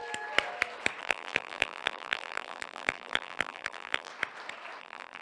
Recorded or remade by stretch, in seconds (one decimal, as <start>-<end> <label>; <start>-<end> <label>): 0.0-1.0 recorded; 1.0-4.1 remade; 4.1-4.8 recorded; 4.8-5.2 remade